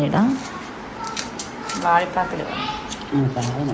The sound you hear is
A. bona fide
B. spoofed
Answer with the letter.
A